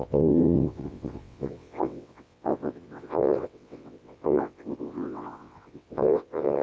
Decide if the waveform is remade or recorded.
remade